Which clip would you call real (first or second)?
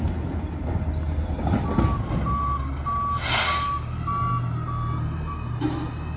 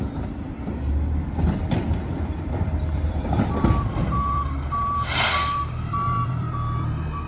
first